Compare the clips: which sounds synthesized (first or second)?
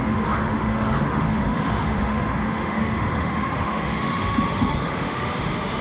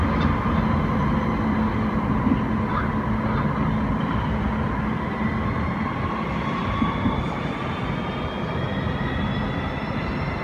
first